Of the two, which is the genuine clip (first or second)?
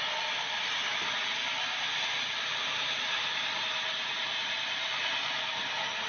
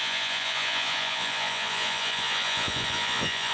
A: first